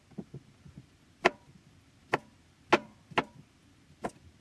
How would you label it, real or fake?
real